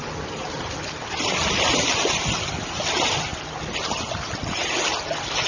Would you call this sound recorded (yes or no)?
yes